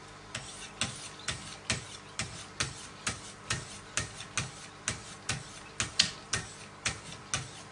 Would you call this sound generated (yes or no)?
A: no